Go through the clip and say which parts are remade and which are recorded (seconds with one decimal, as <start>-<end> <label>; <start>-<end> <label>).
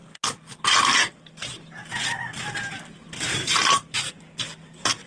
0.0-5.1 recorded